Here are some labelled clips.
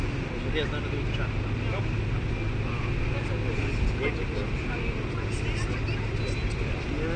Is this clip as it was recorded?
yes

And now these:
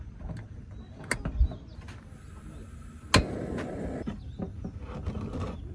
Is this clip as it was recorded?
yes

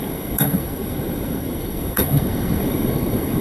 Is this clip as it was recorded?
no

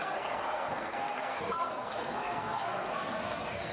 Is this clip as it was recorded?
no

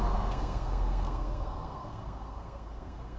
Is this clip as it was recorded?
no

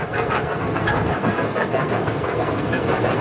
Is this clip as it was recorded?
no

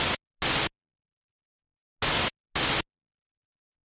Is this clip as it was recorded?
yes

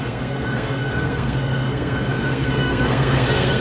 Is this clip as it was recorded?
no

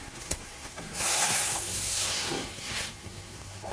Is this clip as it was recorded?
no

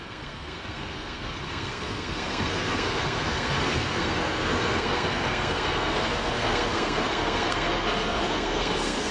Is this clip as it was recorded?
no